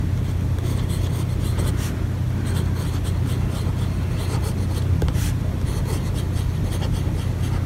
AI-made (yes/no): no